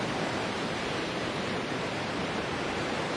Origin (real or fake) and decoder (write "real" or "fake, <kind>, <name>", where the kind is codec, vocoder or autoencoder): fake, vocoder, BigVGAN v2